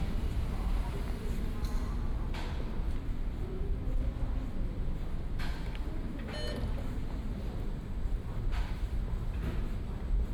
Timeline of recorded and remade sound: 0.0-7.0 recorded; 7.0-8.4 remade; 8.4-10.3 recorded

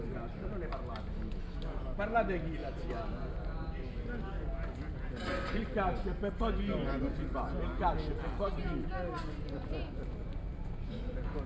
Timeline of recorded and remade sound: 0.0-11.5 recorded

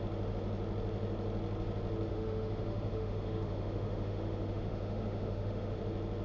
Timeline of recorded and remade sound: 0.0-2.1 recorded; 2.1-5.8 remade; 5.8-6.2 recorded